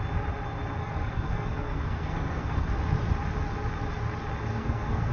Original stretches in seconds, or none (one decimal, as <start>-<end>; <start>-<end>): 0.0-0.8; 2.7-4.5